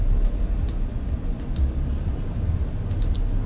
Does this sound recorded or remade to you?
recorded